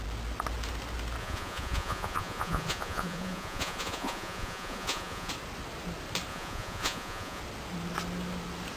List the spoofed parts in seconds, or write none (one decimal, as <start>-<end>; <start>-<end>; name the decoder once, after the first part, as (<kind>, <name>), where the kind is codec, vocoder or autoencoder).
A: 1.2-5.3 (vocoder, Vocos); 6.3-7.4